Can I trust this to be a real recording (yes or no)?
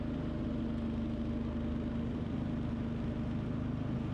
yes